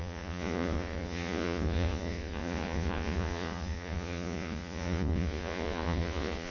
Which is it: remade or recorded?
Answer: remade